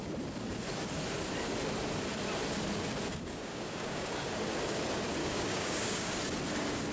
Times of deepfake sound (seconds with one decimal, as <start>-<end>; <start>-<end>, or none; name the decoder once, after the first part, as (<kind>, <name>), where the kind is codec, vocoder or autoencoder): 3.1-4.4 (codec, DAC); 5.2-6.2